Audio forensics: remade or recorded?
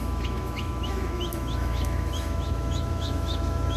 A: remade